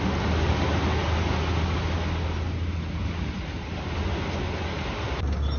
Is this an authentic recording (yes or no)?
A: yes